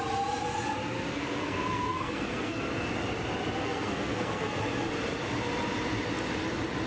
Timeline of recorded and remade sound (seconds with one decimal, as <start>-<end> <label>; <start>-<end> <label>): 0.0-1.1 recorded; 1.1-2.6 remade; 2.6-3.6 recorded; 3.6-4.6 remade; 4.6-6.9 recorded